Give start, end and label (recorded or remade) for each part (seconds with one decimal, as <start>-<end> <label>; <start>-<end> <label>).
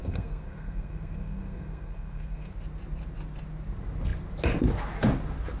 0.0-2.5 remade; 2.5-5.6 recorded